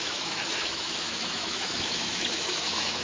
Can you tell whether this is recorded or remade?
remade